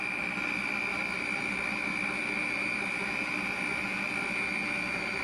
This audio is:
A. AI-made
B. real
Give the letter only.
B